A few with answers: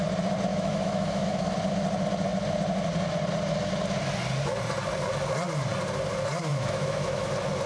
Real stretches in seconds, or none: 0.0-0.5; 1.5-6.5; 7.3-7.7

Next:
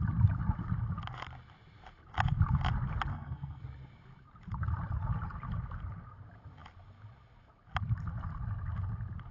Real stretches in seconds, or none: 0.0-3.1; 3.6-9.3

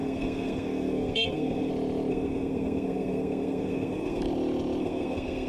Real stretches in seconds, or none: 1.7-2.1; 4.2-4.8

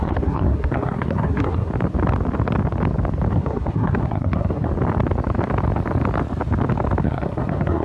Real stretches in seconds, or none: 1.7-3.3; 4.7-7.0

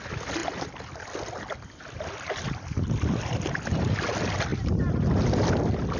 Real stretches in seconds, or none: 0.0-6.0